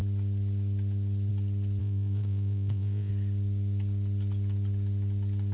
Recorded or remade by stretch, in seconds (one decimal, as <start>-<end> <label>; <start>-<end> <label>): 0.0-1.8 recorded; 1.8-3.1 remade; 3.1-5.5 recorded